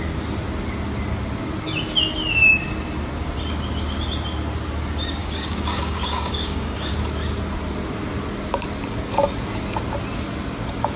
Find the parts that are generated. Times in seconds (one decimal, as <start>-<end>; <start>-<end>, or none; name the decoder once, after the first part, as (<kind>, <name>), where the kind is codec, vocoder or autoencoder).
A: 5.2-6.9 (codec, DAC)